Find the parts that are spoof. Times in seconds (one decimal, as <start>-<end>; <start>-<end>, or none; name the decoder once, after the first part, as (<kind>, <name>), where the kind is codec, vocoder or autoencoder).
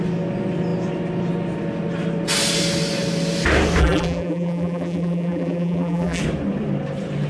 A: 3.8-6.2 (vocoder, BigVGAN v2)